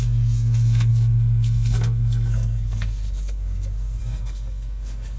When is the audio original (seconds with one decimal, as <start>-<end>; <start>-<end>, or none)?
none